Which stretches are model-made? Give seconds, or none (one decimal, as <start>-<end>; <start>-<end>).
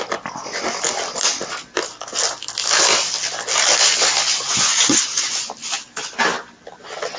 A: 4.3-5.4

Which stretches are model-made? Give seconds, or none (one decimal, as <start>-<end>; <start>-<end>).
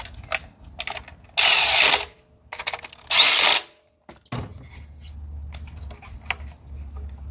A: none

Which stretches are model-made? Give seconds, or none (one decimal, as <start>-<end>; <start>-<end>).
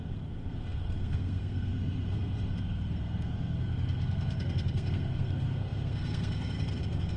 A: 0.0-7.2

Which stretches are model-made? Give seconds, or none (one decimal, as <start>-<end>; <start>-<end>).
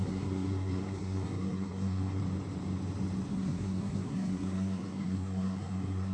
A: 0.0-2.2; 3.3-6.1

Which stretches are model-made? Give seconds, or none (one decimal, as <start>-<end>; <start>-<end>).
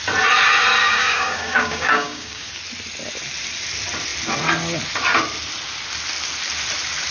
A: 0.8-2.5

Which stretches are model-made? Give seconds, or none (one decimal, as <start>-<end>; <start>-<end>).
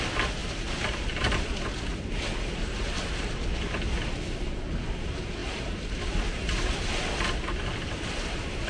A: none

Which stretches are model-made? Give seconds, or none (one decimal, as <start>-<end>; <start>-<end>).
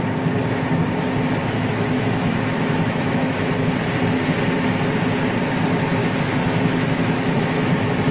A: 1.4-3.7; 6.0-8.1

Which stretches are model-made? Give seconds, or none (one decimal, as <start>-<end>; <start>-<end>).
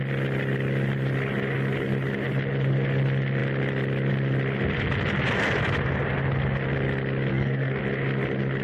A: 7.3-7.8